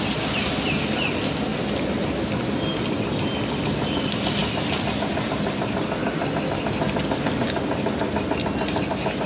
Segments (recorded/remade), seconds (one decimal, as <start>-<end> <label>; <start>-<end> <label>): 0.0-9.3 recorded